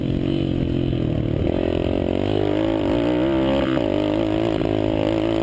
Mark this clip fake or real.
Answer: real